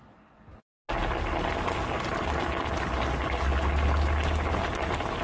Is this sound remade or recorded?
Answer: recorded